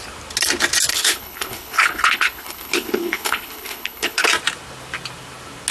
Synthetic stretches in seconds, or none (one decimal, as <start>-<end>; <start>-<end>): 0.9-4.3